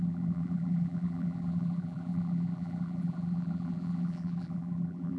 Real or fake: fake